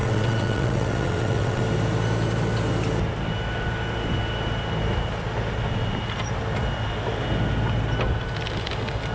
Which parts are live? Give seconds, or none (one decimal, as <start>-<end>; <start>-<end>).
1.6-9.1